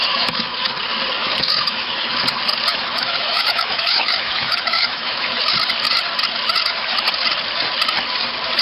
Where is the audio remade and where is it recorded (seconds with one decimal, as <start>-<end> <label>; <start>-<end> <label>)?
0.0-0.7 remade; 0.7-1.2 recorded; 1.2-2.1 remade; 2.1-2.7 recorded; 2.7-5.4 remade; 5.4-8.6 recorded